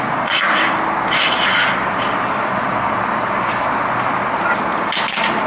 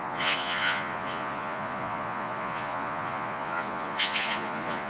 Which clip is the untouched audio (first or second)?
first